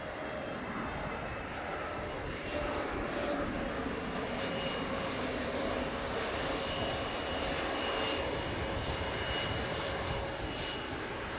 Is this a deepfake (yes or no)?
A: no